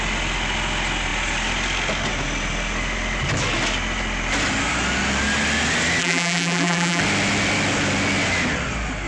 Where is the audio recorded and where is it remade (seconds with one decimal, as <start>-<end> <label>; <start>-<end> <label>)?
0.0-6.0 recorded; 6.0-7.0 remade; 7.0-9.1 recorded